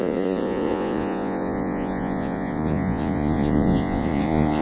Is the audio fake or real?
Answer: fake